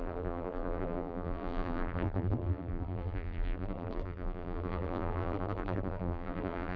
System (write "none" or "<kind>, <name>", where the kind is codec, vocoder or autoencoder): vocoder, BigVGAN v2